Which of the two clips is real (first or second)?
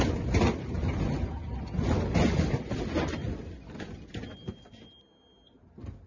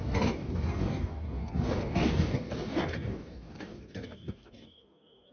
first